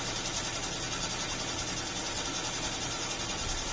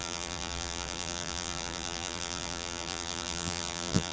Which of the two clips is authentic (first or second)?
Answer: first